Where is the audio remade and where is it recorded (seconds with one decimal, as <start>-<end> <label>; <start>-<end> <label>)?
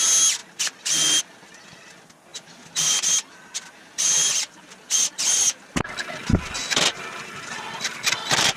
0.0-0.4 recorded; 0.4-1.2 remade; 1.2-2.3 recorded; 2.3-2.8 remade; 2.8-6.9 recorded; 6.9-7.8 remade; 7.8-8.6 recorded